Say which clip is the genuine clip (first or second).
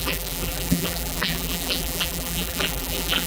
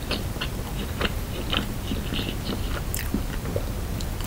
second